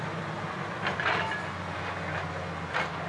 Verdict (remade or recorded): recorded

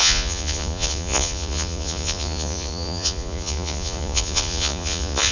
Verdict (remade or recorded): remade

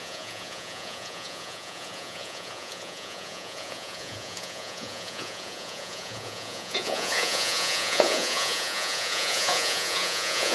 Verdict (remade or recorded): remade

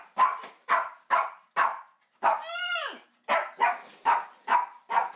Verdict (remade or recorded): recorded